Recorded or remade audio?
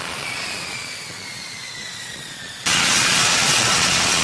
remade